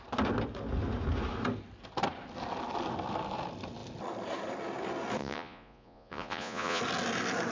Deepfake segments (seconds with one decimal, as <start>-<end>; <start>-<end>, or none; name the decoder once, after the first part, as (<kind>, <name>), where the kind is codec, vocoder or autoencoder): 5.2-6.8 (vocoder, Vocos)